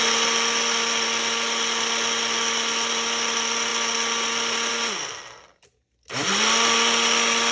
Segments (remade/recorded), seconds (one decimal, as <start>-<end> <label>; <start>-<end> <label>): 0.0-7.5 recorded